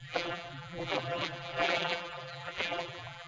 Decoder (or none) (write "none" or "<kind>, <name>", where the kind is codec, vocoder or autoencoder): vocoder, BigVGAN v2